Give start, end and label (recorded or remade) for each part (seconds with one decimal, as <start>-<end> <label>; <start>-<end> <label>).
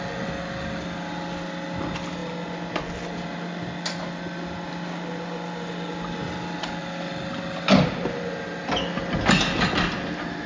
0.0-10.5 recorded